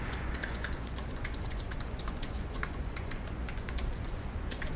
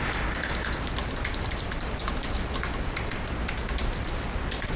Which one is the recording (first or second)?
second